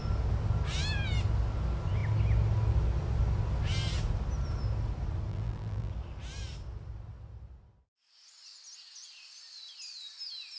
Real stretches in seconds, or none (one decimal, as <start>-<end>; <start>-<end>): 0.0-5.3; 5.9-10.6